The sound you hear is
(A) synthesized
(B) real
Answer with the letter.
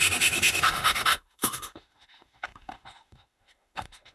A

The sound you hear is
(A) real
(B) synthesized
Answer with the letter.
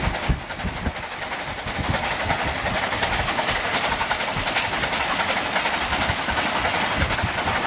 A